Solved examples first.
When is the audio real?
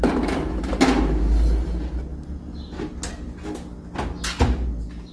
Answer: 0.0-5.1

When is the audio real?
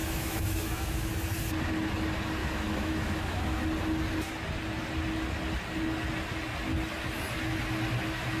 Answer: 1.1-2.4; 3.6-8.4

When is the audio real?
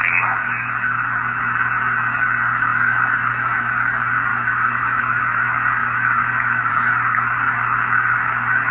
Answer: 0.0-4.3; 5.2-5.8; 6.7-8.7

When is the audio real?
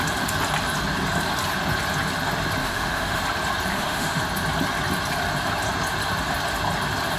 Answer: 0.0-2.6; 3.2-3.7; 4.2-7.2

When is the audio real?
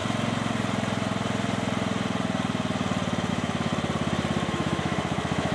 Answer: 0.0-3.3; 3.7-4.5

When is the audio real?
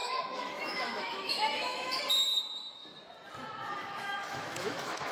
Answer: 2.0-3.8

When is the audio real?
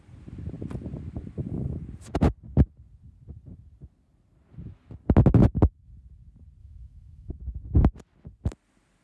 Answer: 0.0-6.6; 7.3-9.0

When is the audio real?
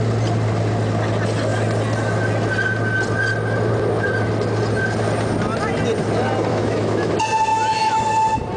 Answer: 0.0-6.5; 7.1-7.5; 8.0-8.6